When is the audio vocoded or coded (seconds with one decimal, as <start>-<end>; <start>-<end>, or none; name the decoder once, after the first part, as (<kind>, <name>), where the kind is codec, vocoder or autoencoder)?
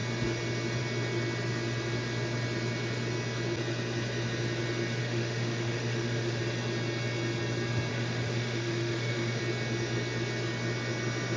5.0-6.4 (autoencoder, DAC-VAE); 7.9-9.4